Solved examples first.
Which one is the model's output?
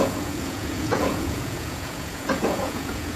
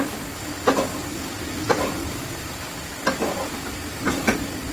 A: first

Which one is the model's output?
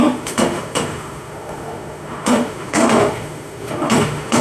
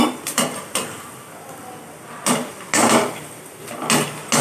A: first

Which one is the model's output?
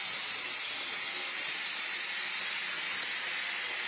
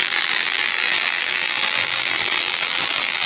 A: second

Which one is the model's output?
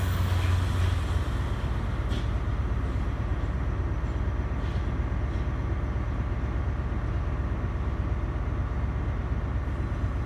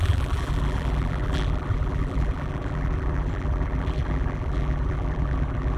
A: second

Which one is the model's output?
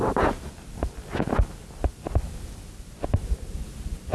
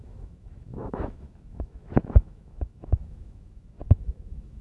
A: second